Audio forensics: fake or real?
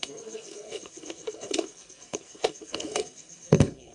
fake